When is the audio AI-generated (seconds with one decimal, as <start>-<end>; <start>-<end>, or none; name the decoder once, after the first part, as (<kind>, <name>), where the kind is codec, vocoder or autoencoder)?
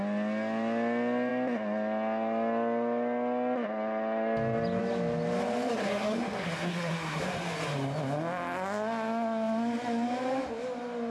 5.7-7.2 (codec, SNAC)